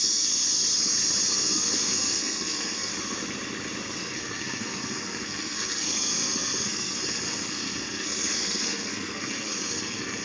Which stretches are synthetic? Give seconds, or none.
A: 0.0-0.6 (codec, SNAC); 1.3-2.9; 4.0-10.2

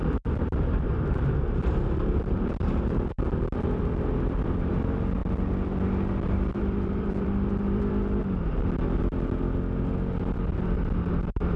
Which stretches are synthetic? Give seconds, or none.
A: 0.0-5.2 (vocoder, BigVGAN v2); 6.3-8.2; 11.1-11.6

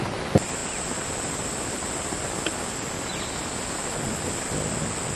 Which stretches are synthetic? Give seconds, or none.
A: none

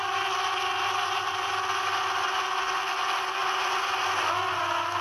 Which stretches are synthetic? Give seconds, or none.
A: none

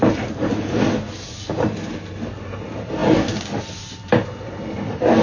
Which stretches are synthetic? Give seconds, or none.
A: none

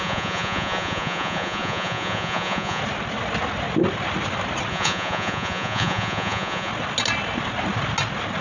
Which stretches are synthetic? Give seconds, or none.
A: 0.0-2.8 (vocoder, Vocos); 4.7-6.7